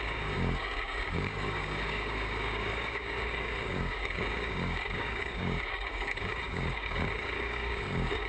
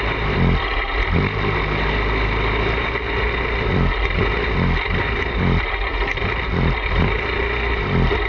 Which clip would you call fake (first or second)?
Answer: first